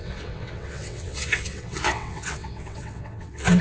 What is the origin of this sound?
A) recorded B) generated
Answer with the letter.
B